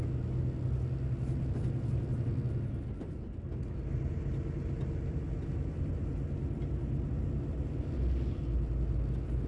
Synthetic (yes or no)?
no